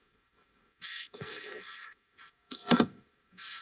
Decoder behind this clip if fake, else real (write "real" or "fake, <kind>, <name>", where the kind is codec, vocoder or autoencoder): fake, codec, SNAC